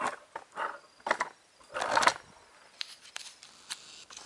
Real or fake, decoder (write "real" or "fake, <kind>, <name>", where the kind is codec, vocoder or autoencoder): real